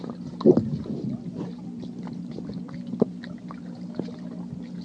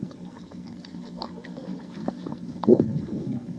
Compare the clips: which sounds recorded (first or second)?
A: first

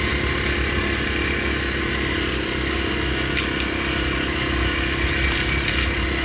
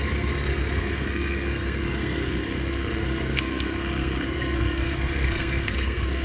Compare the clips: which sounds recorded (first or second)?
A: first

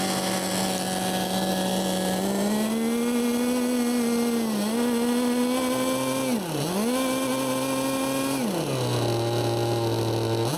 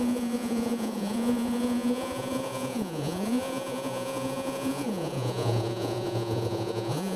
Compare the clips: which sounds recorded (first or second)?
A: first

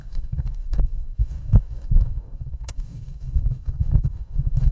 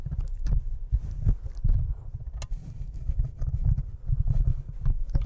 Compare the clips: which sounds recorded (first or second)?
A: second